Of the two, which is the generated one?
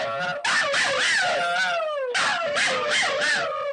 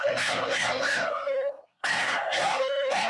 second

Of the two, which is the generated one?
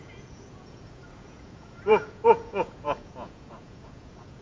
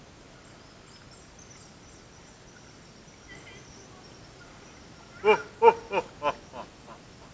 first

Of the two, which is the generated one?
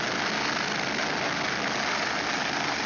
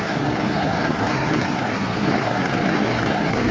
second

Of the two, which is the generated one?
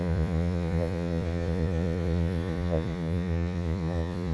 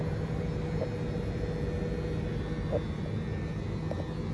first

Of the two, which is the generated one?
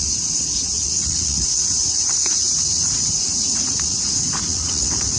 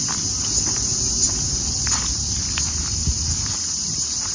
first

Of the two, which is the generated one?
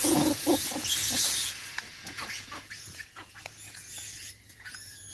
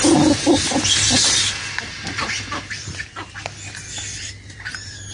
first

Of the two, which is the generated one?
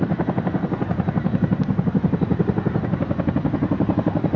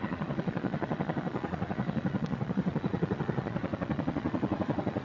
second